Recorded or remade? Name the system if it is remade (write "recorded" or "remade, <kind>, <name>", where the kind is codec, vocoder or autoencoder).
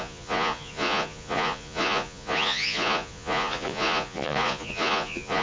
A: remade, vocoder, Vocos